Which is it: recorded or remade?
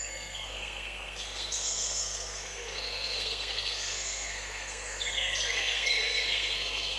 remade